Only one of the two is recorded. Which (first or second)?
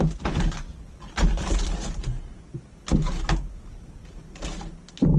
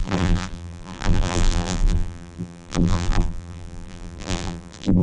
first